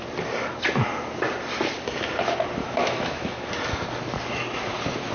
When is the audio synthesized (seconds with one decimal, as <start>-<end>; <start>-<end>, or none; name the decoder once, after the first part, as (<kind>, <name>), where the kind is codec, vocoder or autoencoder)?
2.6-3.5 (autoencoder, DAC-VAE)